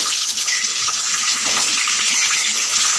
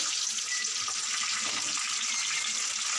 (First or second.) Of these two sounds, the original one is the second